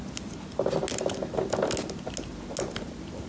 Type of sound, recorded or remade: recorded